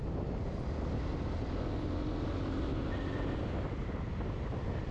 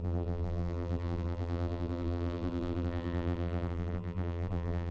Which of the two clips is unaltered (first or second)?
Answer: first